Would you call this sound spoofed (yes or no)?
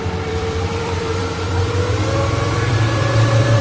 yes